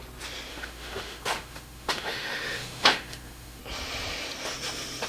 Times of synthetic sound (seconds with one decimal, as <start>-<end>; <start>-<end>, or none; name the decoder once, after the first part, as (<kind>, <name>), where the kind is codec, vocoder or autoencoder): 0.5-3.6 (autoencoder, DAC-VAE)